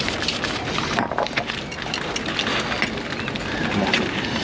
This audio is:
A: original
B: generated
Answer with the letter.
A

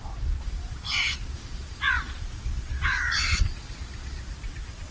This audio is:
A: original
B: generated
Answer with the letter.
B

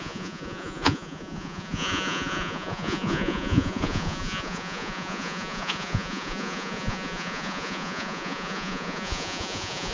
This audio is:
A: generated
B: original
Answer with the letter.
A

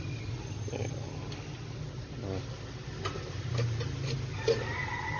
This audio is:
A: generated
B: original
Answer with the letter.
B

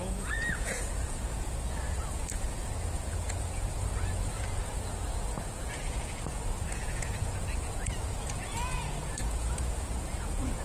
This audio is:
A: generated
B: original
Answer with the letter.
A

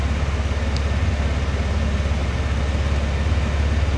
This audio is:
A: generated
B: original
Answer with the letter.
B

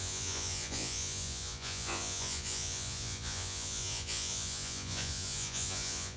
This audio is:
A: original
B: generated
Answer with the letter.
B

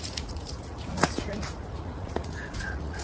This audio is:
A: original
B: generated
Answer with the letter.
B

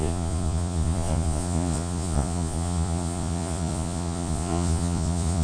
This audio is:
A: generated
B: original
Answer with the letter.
A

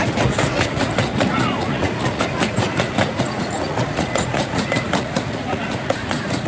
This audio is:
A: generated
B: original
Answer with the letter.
A